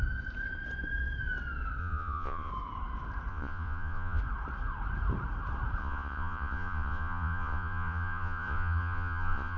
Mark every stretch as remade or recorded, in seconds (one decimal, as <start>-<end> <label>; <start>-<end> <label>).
0.0-1.8 recorded; 1.8-2.5 remade; 2.5-3.3 recorded; 3.3-4.2 remade; 4.2-5.8 recorded; 5.8-9.6 remade